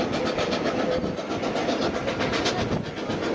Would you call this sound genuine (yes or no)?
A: yes